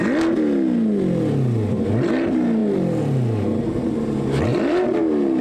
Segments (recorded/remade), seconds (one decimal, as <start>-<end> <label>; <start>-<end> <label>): 0.0-4.5 recorded; 4.5-5.0 remade; 5.0-5.4 recorded